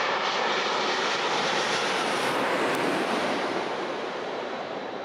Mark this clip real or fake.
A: fake